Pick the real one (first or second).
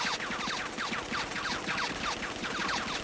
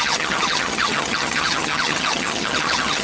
first